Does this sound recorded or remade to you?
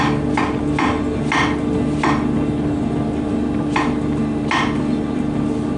recorded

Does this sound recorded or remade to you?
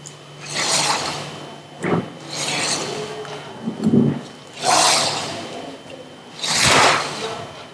recorded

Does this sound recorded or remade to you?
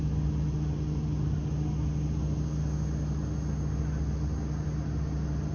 recorded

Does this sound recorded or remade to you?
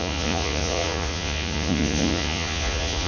remade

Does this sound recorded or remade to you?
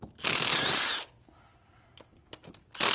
recorded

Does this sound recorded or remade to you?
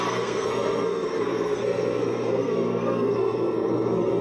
remade